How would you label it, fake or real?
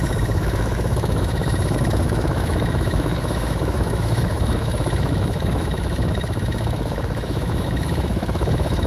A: fake